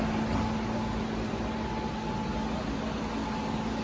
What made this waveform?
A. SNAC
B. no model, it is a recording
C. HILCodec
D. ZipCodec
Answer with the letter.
B